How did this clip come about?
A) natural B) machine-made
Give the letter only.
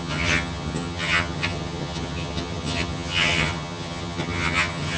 B